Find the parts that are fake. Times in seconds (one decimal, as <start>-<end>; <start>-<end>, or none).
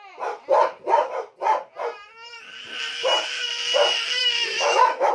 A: 4.2-5.1